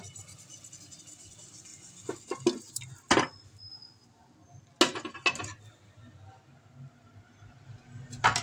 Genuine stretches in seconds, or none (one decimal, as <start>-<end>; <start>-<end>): 0.0-8.4